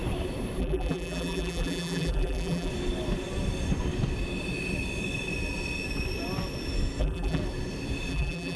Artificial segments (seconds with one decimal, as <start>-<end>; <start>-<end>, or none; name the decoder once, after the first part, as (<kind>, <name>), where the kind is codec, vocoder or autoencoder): 0.6-2.7 (vocoder, BigVGAN v2); 7.0-7.4; 8.1-8.6

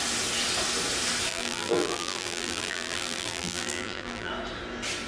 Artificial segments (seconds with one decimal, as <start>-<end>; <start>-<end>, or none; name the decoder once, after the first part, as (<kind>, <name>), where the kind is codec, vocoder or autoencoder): 1.3-4.3 (vocoder, BigVGAN v2)